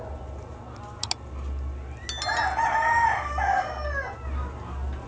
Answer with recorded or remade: recorded